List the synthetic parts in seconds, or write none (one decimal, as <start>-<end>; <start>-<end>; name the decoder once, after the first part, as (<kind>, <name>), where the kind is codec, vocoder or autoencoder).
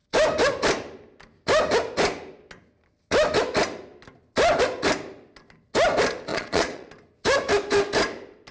6.3-6.9 (vocoder, Vocos)